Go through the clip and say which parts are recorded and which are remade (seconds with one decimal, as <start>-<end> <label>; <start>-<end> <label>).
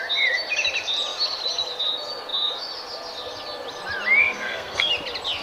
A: 0.0-4.2 recorded; 4.2-4.9 remade; 4.9-5.4 recorded